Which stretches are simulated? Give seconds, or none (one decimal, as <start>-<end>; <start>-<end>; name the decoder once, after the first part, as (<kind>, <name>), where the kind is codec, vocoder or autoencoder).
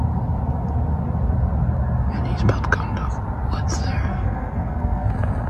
4.1-5.1 (codec, SNAC)